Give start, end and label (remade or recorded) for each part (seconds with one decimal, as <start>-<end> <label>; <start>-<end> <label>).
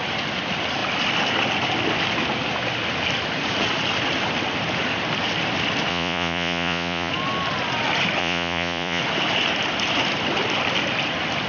0.0-5.9 recorded; 5.9-7.1 remade; 7.1-8.2 recorded; 8.2-9.0 remade; 9.0-11.5 recorded